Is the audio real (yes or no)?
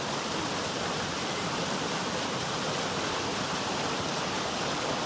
yes